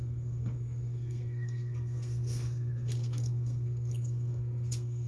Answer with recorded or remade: remade